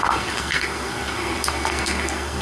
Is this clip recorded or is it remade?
remade